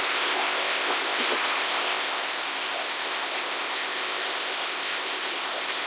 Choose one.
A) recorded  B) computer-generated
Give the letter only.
B